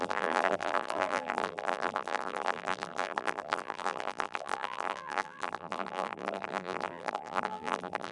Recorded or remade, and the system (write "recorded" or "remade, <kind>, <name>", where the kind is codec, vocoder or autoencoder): remade, vocoder, BigVGAN v2